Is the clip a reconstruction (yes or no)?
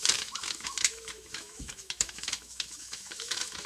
yes